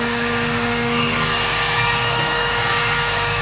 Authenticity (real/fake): fake